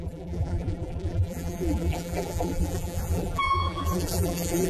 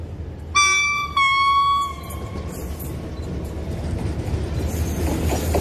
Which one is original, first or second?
second